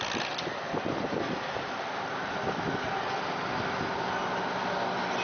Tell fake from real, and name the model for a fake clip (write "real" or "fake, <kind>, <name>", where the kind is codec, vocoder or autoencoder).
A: real